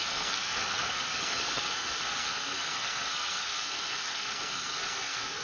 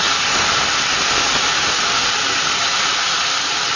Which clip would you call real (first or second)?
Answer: second